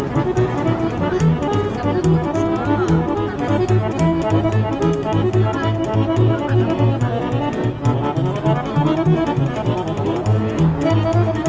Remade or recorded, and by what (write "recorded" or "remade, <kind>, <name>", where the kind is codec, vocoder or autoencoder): recorded